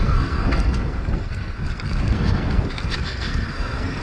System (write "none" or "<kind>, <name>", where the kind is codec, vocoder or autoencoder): codec, SNAC